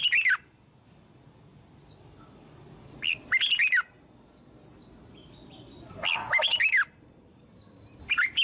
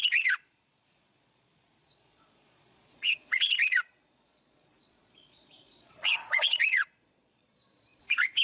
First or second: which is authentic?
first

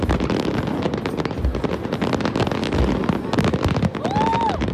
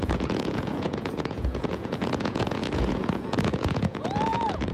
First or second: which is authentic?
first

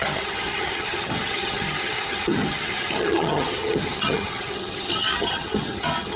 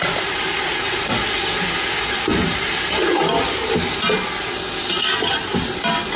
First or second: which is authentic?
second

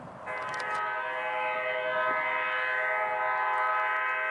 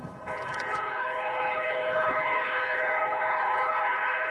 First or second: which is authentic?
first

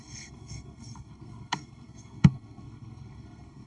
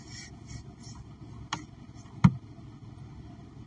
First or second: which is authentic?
second